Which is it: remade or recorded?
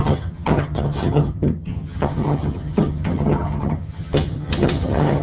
remade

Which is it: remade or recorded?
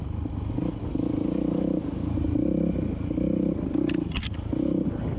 recorded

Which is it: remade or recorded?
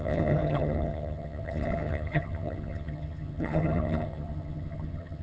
remade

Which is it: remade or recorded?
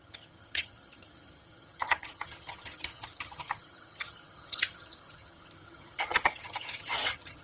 remade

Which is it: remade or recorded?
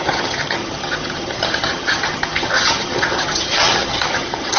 remade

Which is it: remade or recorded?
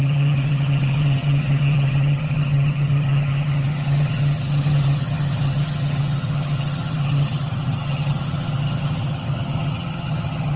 remade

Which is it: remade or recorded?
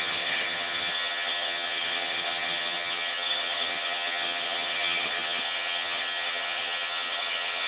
remade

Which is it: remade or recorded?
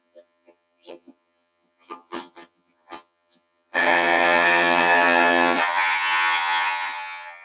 remade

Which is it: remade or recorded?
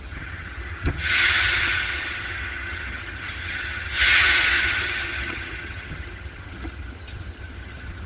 remade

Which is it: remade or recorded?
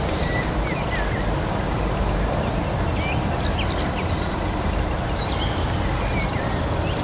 recorded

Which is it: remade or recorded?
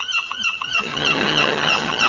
remade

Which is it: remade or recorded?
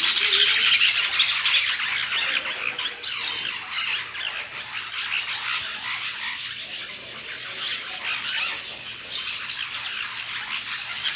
recorded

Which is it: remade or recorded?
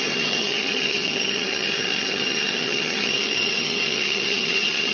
remade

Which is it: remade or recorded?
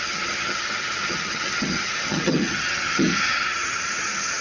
remade